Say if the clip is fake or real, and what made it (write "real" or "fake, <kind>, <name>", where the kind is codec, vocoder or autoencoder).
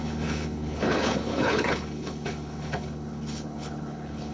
fake, codec, HILCodec